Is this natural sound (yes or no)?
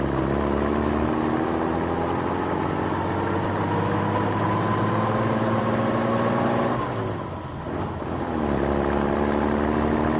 yes